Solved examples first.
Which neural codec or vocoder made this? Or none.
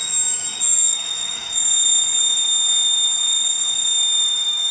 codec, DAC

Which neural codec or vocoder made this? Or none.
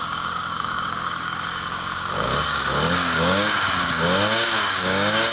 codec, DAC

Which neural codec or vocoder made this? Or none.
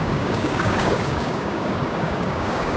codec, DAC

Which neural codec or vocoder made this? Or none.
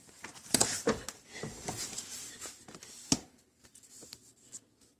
none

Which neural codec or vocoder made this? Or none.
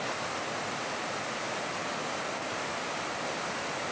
none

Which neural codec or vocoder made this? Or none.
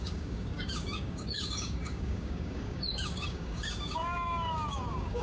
codec, DAC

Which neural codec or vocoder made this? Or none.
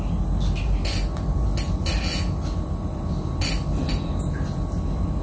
none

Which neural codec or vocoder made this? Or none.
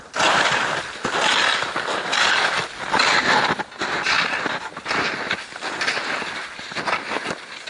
none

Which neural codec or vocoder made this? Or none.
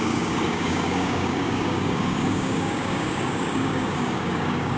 codec, DAC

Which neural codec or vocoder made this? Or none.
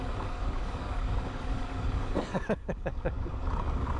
codec, DAC